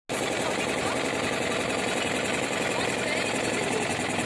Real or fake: real